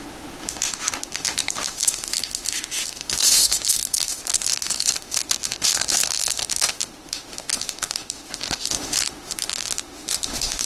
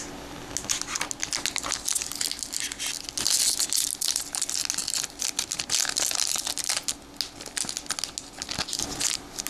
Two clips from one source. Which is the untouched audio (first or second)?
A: second